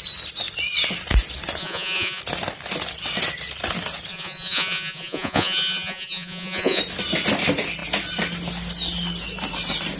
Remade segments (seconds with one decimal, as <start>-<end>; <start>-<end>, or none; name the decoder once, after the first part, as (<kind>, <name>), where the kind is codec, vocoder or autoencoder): 1.6-2.2 (vocoder, Vocos); 4.1-6.8